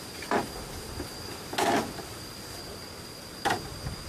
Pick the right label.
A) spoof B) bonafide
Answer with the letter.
B